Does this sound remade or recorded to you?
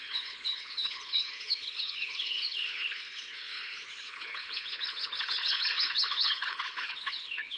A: remade